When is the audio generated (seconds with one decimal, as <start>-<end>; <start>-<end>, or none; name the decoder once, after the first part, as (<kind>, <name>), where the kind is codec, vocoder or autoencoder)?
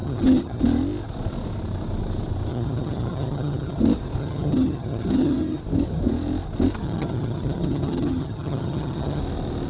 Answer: 0.0-0.6 (vocoder, HiFi-GAN); 2.5-3.8; 4.2-5.6; 6.8-9.2